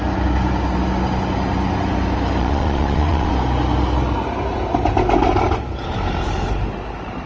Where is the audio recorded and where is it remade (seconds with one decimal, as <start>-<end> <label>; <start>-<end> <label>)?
0.0-2.4 recorded; 2.4-3.3 remade; 3.3-7.3 recorded